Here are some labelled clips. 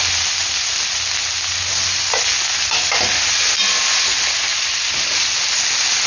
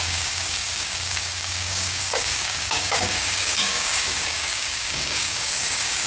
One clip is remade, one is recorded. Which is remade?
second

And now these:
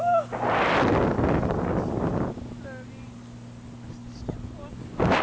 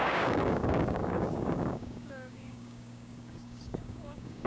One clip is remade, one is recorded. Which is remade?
second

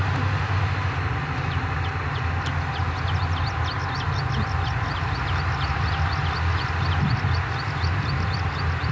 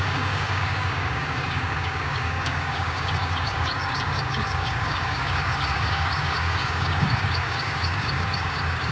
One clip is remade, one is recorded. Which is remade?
second